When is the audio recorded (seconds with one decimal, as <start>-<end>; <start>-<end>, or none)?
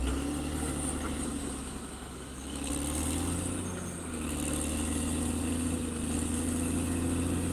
0.0-1.4; 2.7-7.5